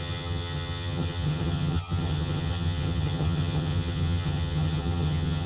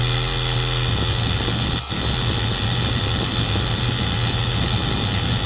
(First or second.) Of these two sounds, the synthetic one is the first